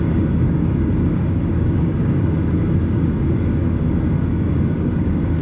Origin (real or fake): fake